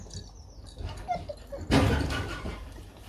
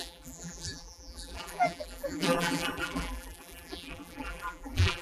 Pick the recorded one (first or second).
first